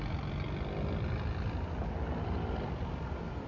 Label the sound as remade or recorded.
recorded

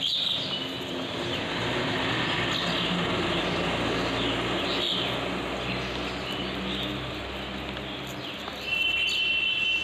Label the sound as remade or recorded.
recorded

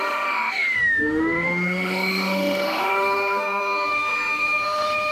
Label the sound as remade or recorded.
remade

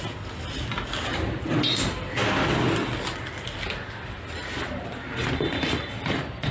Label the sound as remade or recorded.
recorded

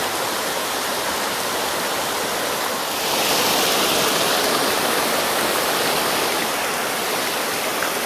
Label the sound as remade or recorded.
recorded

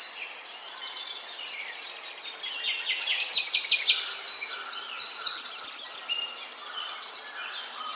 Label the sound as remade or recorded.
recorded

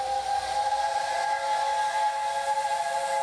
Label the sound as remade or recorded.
recorded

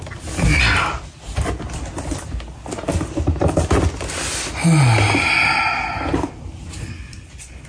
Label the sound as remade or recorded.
recorded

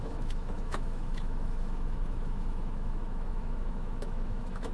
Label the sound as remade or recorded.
remade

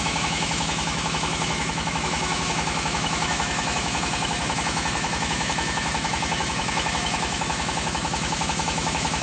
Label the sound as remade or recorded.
remade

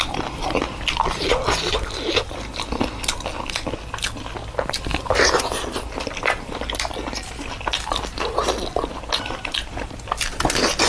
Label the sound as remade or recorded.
recorded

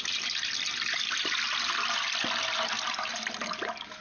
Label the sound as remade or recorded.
recorded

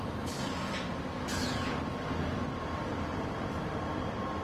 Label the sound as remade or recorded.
recorded